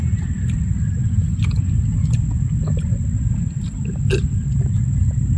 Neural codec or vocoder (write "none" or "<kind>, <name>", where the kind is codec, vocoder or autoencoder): none